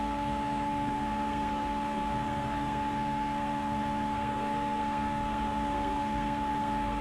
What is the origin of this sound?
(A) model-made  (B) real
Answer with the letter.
A